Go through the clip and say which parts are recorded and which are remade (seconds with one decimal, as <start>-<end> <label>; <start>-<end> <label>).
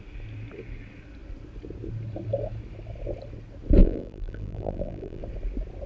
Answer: 0.0-3.8 recorded; 3.8-5.2 remade; 5.2-5.9 recorded